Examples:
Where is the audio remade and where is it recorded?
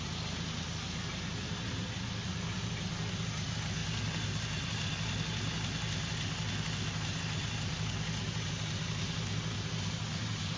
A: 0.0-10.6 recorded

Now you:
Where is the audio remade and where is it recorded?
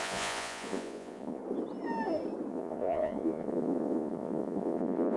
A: 0.0-1.4 remade; 1.4-2.5 recorded; 2.5-5.2 remade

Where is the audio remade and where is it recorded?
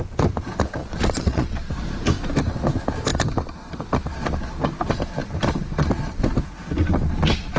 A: 0.0-0.8 recorded; 0.8-1.7 remade; 1.7-7.6 recorded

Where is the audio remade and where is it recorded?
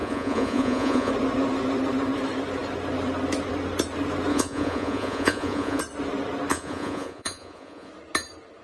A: 0.0-1.1 remade; 1.1-4.3 recorded; 4.3-5.8 remade; 5.8-6.5 recorded; 6.5-7.9 remade; 7.9-8.6 recorded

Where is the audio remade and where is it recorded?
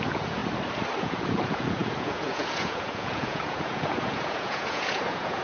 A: 0.0-0.4 remade; 0.4-1.0 recorded; 1.0-5.4 remade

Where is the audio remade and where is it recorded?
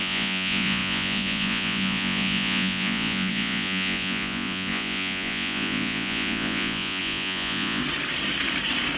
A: 0.0-7.8 remade; 7.8-9.0 recorded